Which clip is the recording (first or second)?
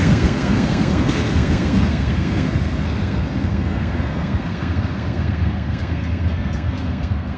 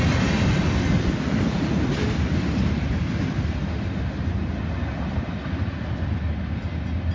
second